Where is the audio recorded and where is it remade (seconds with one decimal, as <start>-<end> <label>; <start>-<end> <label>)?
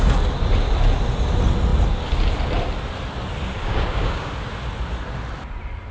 0.0-3.6 recorded; 3.6-4.3 remade; 4.3-5.9 recorded